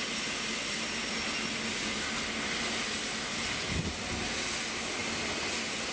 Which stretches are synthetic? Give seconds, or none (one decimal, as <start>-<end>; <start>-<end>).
none